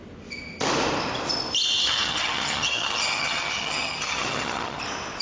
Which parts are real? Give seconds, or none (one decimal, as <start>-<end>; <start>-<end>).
0.0-1.8; 4.8-5.2